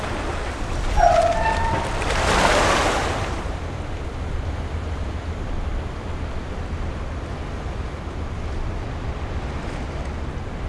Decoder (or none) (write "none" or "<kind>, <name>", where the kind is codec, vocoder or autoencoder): none